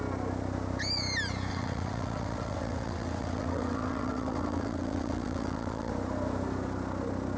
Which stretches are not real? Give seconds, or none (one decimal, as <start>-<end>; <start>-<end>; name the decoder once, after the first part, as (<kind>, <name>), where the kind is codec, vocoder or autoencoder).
1.5-5.9 (vocoder, WaveNeXt)